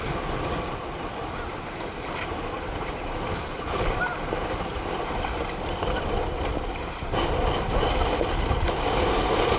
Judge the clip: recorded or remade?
recorded